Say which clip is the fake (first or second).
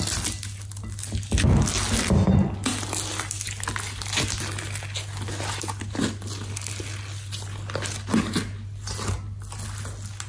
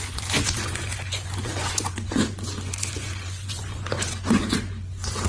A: second